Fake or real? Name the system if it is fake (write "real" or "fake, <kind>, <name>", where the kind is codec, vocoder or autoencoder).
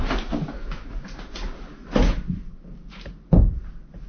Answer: real